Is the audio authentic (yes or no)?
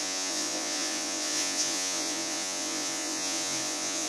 no